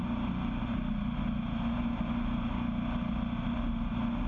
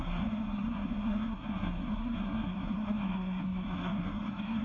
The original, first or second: first